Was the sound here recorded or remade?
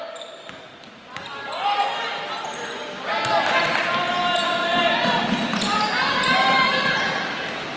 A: recorded